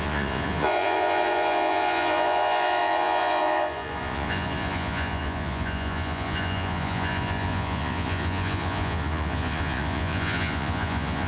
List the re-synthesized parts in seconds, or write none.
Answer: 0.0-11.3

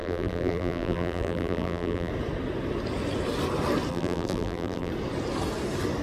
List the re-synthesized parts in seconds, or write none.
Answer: 0.0-2.1; 3.9-4.9